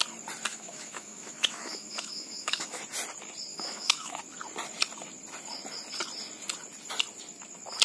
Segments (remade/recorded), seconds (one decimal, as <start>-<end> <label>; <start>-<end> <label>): 0.0-0.5 recorded; 0.5-2.8 remade; 2.8-3.5 recorded; 3.5-4.2 remade; 4.2-7.8 recorded